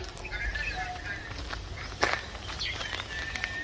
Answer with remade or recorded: recorded